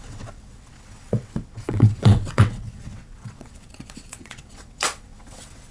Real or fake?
fake